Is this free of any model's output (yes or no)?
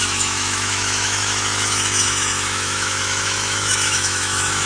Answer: no